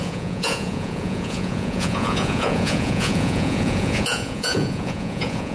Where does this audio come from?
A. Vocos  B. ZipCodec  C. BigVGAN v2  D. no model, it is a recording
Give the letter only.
A